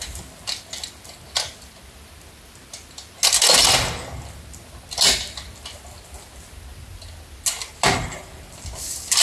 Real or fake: real